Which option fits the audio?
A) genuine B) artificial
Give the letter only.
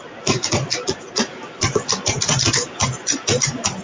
B